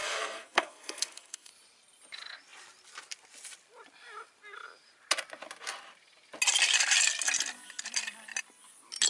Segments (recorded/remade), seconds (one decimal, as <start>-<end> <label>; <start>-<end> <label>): 0.0-1.5 remade; 1.5-9.1 recorded